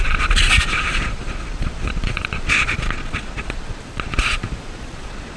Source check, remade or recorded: remade